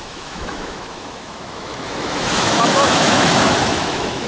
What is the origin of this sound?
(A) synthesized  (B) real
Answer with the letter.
A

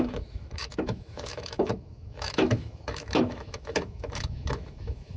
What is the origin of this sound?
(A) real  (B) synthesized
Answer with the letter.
B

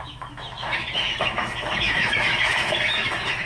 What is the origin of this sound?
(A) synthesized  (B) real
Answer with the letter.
A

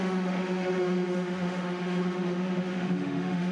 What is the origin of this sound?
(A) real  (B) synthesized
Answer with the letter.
B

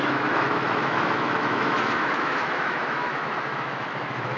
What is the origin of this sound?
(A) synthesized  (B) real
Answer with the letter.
A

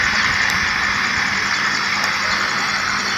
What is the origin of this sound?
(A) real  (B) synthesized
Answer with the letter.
A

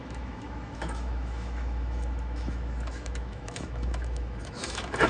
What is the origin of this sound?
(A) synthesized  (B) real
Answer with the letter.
A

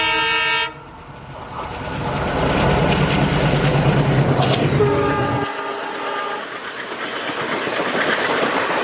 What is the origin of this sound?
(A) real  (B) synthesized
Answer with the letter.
A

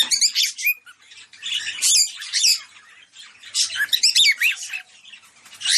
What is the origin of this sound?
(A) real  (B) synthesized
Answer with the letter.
A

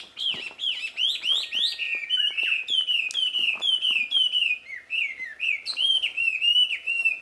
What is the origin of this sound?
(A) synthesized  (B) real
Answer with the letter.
B